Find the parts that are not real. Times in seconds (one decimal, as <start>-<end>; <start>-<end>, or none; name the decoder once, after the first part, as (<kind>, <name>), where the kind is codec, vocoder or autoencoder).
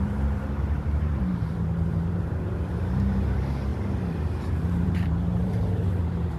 0.0-3.7 (vocoder, BigVGAN v2); 4.5-6.4